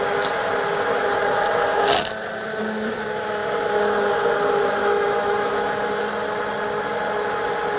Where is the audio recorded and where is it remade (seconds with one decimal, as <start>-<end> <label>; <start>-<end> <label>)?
0.0-2.5 recorded; 2.5-3.0 remade; 3.0-4.8 recorded; 4.8-6.0 remade; 6.0-7.8 recorded